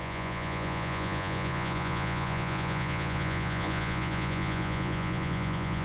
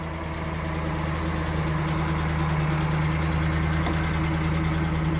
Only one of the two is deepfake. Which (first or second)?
first